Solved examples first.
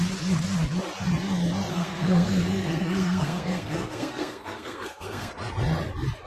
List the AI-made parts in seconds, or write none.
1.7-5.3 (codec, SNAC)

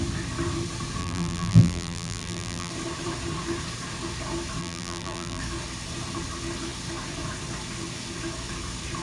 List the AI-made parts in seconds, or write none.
1.0-2.7 (vocoder, BigVGAN v2); 4.6-5.4